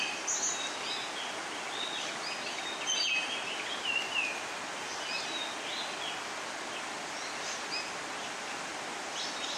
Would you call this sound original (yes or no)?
yes